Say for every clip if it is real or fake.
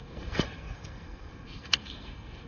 fake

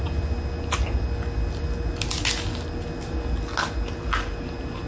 real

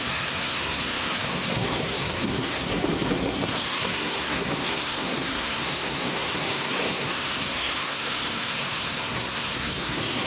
fake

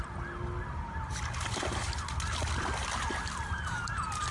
real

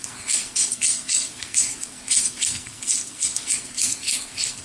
fake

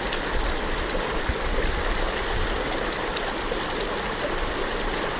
real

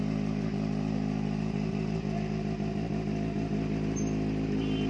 real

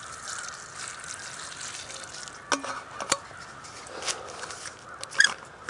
real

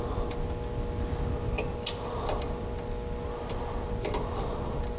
real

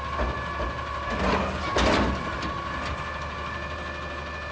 real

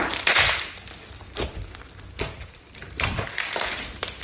real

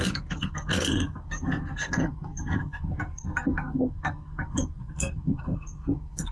fake